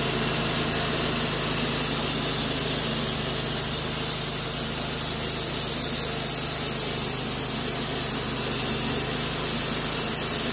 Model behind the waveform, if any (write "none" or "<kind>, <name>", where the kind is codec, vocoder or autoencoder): none